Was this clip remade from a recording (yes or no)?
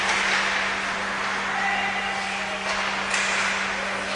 no